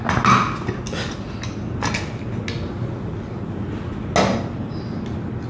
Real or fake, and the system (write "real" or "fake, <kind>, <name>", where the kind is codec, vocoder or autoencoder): real